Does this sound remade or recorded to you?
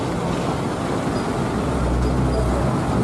recorded